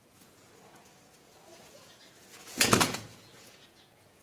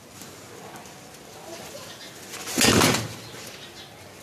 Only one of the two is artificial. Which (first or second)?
first